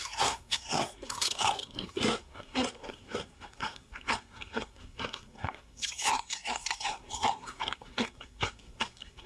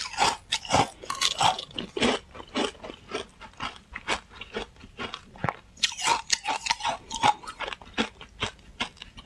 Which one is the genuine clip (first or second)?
second